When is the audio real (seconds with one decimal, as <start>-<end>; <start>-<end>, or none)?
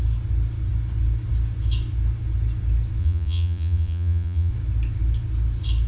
0.0-3.0; 4.5-5.9